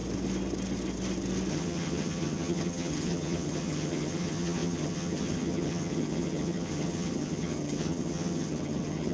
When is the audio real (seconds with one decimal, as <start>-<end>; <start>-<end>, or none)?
0.0-1.5